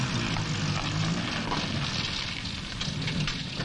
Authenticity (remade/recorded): recorded